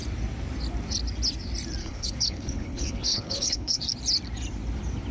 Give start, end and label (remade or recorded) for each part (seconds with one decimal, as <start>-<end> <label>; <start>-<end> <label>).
0.0-1.8 recorded; 1.8-3.8 remade; 3.8-5.1 recorded